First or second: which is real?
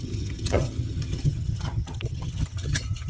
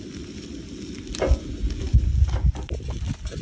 second